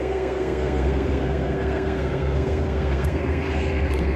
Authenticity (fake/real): fake